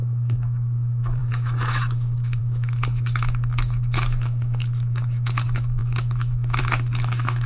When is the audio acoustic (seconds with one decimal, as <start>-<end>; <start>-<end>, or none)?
none